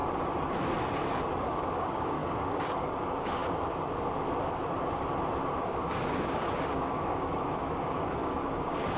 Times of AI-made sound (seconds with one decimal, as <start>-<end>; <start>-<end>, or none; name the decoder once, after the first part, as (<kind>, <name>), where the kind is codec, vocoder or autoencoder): 1.4-3.4 (codec, DAC); 5.6-9.0